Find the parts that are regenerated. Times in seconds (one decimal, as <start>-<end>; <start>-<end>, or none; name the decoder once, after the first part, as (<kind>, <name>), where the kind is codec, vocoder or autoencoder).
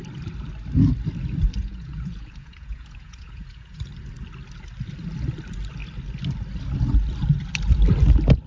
1.6-3.8 (vocoder, Vocos)